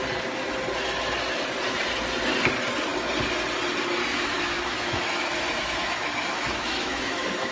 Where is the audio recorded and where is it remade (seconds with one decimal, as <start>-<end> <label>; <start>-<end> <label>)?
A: 0.0-4.1 recorded; 4.1-7.5 remade